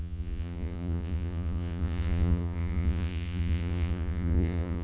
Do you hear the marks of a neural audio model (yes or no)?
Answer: yes